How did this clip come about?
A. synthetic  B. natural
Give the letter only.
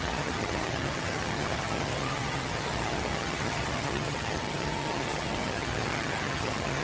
A